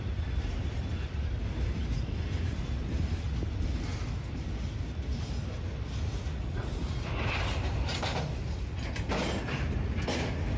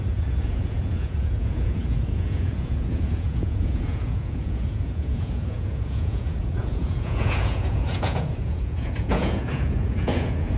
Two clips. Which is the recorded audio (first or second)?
first